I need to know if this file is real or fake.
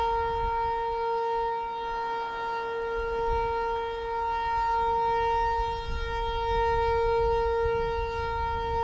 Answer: real